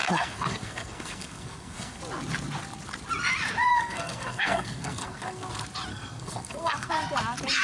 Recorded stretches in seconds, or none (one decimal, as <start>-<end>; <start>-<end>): 2.0-3.7; 5.5-5.9; 6.9-7.6